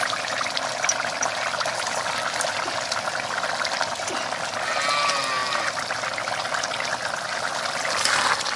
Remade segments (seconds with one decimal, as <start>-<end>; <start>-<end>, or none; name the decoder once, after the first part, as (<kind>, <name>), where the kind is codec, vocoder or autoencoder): none